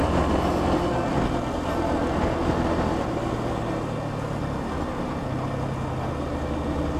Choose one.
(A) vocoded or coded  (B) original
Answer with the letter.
B